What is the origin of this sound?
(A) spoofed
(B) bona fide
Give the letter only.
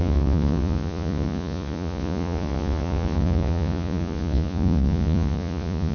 A